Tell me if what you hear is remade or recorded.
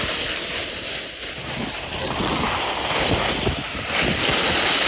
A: recorded